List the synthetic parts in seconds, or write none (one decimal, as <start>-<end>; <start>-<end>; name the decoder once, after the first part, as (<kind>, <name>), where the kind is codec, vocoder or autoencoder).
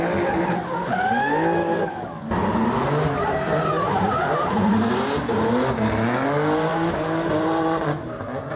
1.6-2.3 (codec, DAC); 6.7-7.3